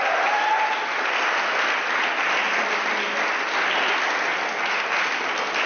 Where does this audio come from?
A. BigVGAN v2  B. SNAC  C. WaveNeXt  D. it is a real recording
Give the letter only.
D